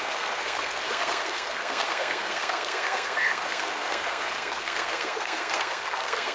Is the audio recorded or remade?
remade